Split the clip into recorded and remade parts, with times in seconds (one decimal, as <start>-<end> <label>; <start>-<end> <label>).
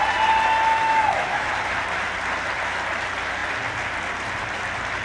0.0-0.7 recorded; 0.7-1.5 remade; 1.5-5.0 recorded